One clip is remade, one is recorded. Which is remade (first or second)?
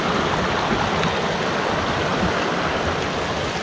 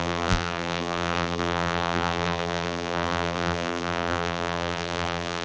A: second